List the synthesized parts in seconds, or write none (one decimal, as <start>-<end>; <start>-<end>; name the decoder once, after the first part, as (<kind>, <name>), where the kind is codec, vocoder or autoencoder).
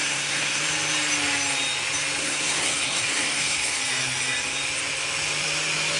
0.0-0.6 (codec, SNAC); 2.2-3.8